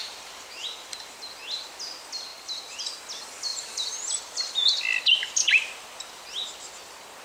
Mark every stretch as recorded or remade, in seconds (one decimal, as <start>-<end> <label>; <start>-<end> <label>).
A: 0.0-0.9 remade; 0.9-2.3 recorded; 2.3-3.0 remade; 3.0-3.5 recorded; 3.5-4.2 remade; 4.2-7.2 recorded